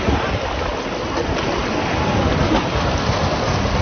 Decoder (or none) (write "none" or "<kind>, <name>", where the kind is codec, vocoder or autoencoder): none